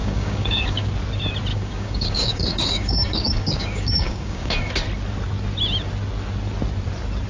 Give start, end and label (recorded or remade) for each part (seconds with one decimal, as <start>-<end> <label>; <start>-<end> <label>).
0.0-0.9 remade; 0.9-1.5 recorded; 1.5-4.7 remade; 4.7-7.3 recorded